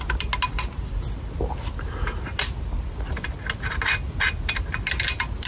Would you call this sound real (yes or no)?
yes